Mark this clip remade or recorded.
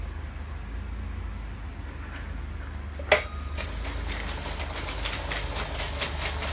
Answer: recorded